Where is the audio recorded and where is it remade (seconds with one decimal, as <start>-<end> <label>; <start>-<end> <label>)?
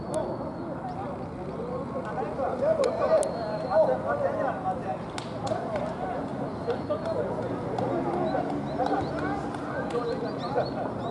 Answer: 0.0-11.1 recorded